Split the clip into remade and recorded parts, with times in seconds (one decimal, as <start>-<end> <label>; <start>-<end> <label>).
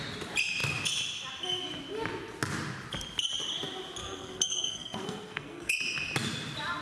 0.0-4.0 recorded; 4.0-5.8 remade; 5.8-6.8 recorded